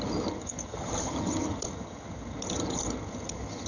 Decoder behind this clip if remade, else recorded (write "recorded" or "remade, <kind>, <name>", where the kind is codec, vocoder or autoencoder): remade, vocoder, HiFi-GAN